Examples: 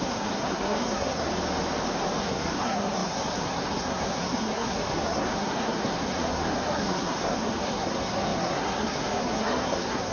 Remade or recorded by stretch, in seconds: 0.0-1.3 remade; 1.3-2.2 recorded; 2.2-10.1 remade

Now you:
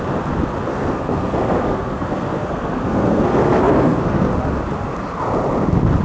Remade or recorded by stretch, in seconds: 0.0-0.7 recorded; 0.7-4.3 remade; 4.3-6.0 recorded

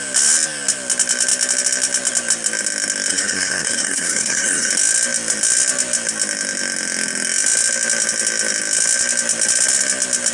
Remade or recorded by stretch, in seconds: 0.0-3.1 recorded; 3.1-4.7 remade; 4.7-10.3 recorded

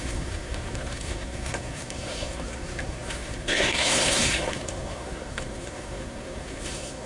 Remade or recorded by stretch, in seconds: 0.0-7.1 remade

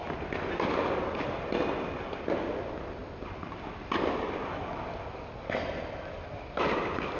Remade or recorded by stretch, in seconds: 0.0-7.2 recorded